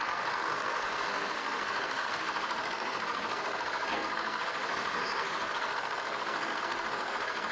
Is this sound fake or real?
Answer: fake